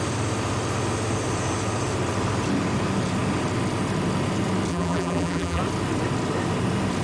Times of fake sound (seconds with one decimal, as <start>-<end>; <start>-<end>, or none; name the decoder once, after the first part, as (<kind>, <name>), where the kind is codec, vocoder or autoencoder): 4.7-5.6 (vocoder, BigVGAN v2)